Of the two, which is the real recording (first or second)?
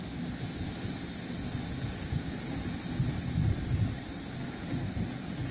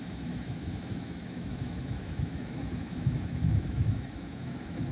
first